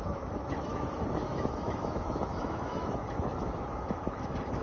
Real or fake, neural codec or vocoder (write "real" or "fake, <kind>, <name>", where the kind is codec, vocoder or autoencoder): fake, autoencoder, DAC-VAE